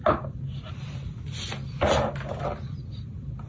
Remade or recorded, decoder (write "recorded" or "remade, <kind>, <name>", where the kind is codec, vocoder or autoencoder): recorded